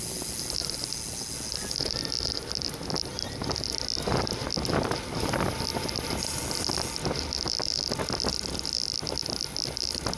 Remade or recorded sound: recorded